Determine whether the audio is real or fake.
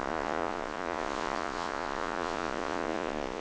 fake